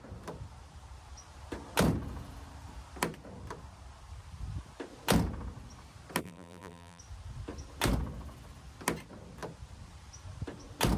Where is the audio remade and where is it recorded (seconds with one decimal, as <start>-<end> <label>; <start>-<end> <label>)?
0.0-6.2 recorded; 6.2-7.0 remade; 7.0-11.0 recorded